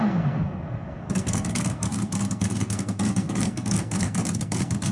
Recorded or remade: remade